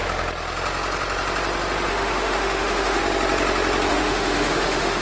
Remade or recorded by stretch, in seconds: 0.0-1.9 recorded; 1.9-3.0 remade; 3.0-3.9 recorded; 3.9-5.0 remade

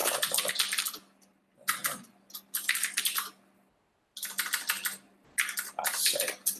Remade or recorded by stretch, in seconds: 0.0-6.6 recorded

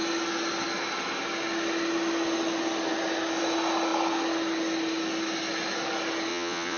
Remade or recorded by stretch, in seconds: 0.0-6.3 recorded; 6.3-6.8 remade

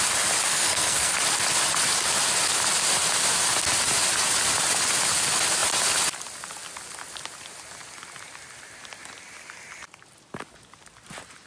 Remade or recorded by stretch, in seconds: 0.0-0.5 recorded; 0.5-1.1 remade; 1.1-11.5 recorded

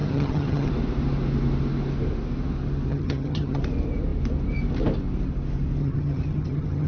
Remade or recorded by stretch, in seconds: 0.0-0.7 remade; 0.7-2.9 recorded; 2.9-3.6 remade; 3.6-5.8 recorded; 5.8-6.9 remade